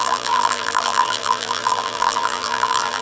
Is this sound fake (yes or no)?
yes